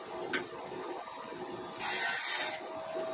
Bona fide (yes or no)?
yes